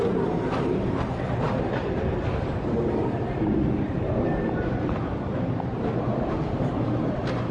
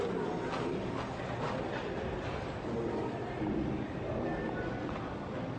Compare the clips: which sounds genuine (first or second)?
second